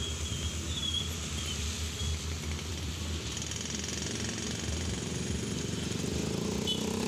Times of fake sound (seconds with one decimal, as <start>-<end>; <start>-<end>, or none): none